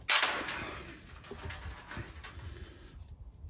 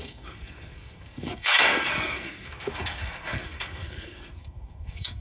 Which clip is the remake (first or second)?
second